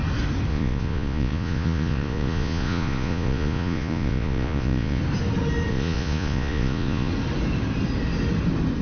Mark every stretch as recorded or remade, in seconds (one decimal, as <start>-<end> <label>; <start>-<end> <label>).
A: 0.0-0.5 recorded; 0.5-5.0 remade; 5.0-5.7 recorded; 5.7-7.1 remade; 7.1-8.8 recorded

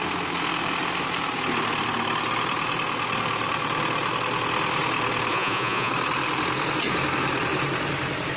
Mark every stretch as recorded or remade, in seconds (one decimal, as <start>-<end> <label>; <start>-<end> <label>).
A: 0.0-5.3 recorded; 5.3-5.9 remade; 5.9-8.4 recorded

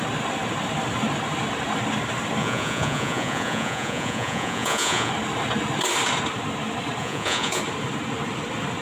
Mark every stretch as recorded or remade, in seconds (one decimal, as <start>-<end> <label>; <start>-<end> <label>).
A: 0.0-2.4 recorded; 2.4-5.1 remade; 5.1-7.0 recorded; 7.0-7.6 remade; 7.6-8.8 recorded

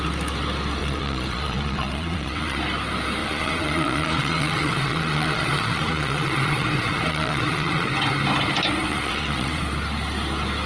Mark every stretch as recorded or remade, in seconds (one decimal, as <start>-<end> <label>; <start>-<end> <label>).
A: 0.0-0.8 recorded; 0.8-2.6 remade; 2.6-3.2 recorded; 3.2-7.9 remade; 7.9-8.9 recorded; 8.9-9.6 remade; 9.6-10.7 recorded

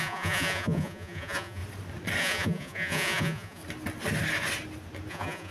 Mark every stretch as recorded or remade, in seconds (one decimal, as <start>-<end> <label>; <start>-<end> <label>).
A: 0.0-1.6 remade; 1.6-2.2 recorded; 2.2-3.6 remade; 3.6-5.1 recorded; 5.1-5.5 remade

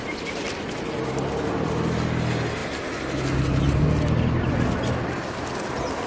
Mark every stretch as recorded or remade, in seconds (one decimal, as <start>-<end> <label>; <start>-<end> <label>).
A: 0.0-6.1 recorded

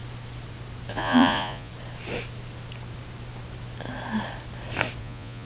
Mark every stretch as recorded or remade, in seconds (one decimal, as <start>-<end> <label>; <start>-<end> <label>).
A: 0.0-0.9 recorded; 0.9-1.7 remade; 1.7-5.0 recorded; 5.0-5.5 remade

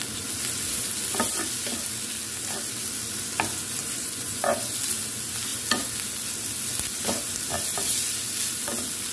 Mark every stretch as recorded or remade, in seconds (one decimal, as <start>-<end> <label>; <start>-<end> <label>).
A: 0.0-3.8 recorded; 3.8-4.6 remade; 4.6-9.1 recorded